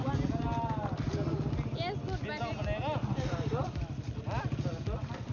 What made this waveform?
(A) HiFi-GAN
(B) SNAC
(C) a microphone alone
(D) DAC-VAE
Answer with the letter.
C